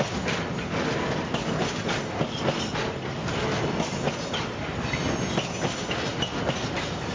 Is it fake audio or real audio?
real